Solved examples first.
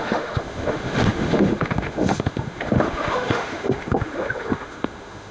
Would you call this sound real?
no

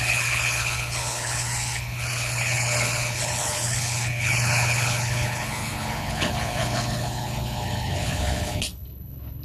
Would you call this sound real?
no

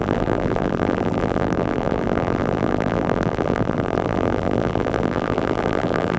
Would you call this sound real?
no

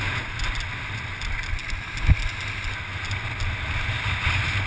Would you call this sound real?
yes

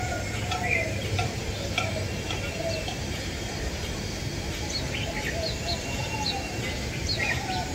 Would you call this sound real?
no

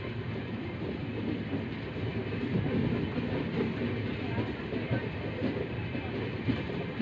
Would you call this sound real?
yes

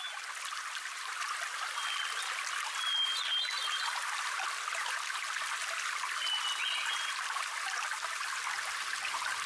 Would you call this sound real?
yes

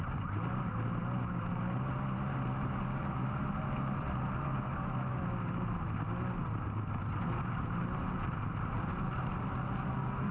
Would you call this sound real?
yes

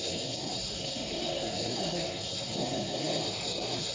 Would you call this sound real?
no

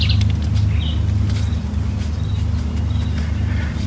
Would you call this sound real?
yes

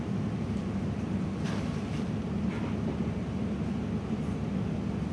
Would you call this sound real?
yes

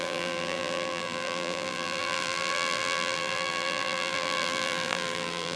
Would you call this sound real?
no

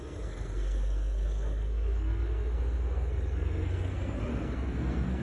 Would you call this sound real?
no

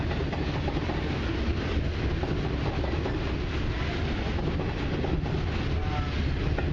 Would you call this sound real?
yes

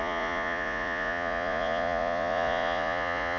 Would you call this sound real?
no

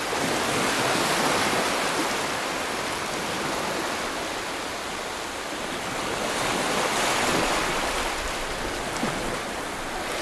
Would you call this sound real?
yes